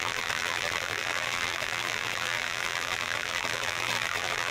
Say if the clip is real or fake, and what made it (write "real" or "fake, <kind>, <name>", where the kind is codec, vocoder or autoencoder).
fake, vocoder, BigVGAN v2